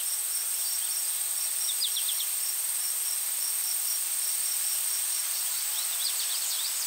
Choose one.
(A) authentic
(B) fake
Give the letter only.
A